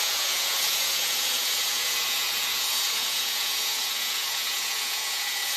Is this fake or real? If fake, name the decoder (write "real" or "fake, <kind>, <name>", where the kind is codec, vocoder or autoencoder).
fake, vocoder, Vocos